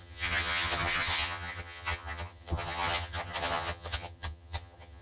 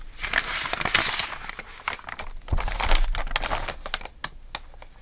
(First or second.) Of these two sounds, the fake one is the first